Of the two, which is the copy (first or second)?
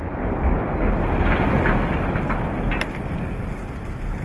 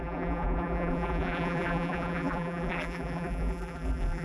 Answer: second